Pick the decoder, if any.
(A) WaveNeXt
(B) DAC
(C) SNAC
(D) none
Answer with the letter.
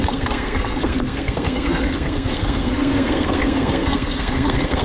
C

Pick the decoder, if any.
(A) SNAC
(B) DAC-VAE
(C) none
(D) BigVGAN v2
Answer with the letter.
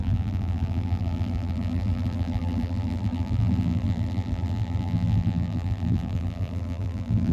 D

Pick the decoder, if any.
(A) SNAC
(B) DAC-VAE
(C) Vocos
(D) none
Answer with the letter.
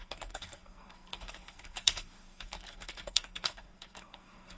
A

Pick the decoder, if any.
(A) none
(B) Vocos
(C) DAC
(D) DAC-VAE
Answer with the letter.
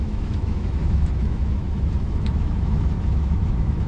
D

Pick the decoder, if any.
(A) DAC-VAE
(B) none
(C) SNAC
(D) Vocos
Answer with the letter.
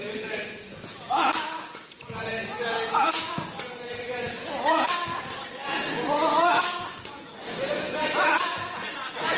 D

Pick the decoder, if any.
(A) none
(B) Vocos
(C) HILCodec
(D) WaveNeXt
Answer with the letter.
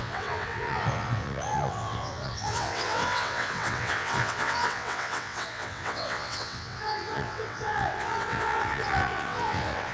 D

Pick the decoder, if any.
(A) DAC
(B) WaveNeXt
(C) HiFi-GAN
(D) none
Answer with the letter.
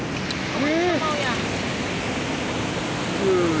D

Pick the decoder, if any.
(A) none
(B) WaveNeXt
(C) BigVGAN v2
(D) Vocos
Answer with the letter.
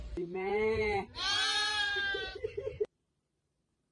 C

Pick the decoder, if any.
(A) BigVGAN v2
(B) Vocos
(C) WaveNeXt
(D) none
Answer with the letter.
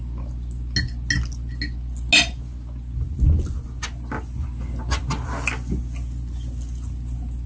D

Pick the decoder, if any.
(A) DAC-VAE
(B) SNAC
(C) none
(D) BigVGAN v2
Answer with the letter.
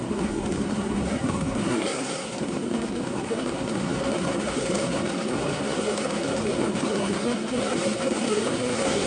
B